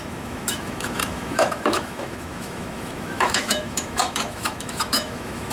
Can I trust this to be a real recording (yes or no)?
no